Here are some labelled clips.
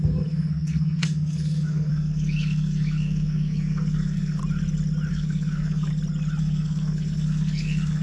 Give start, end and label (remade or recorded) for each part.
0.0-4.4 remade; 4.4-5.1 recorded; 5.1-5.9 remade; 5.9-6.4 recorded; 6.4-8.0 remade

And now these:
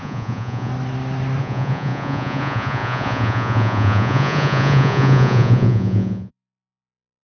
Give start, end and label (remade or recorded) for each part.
0.0-0.7 remade; 0.7-1.4 recorded; 1.4-7.2 remade

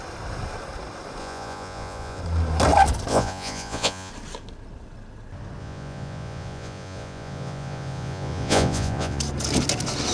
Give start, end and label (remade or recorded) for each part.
0.0-1.2 recorded; 1.2-2.2 remade; 2.2-3.1 recorded; 3.1-4.1 remade; 4.1-5.6 recorded; 5.6-9.2 remade; 9.2-10.1 recorded

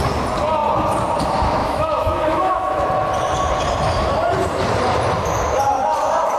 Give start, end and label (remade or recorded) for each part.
0.0-1.6 recorded; 1.6-2.9 remade; 2.9-6.4 recorded

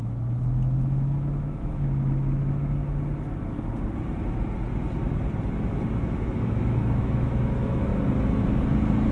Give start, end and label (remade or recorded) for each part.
0.0-2.8 remade; 2.8-6.0 recorded; 6.0-7.9 remade; 7.9-9.1 recorded

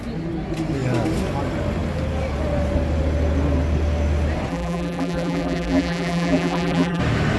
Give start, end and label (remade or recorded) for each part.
0.0-4.5 recorded; 4.5-7.0 remade; 7.0-7.4 recorded